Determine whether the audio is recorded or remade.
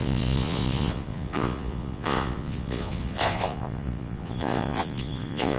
remade